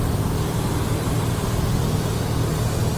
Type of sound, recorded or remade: recorded